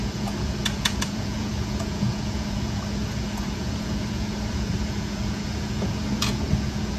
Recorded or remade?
remade